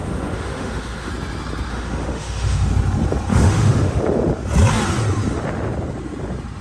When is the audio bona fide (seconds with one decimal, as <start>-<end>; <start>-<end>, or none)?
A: 1.1-1.7; 2.7-3.3; 4.0-6.6